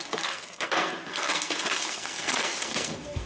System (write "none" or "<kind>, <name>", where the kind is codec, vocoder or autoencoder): codec, SNAC